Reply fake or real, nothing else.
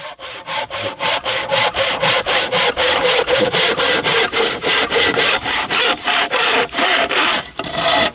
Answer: fake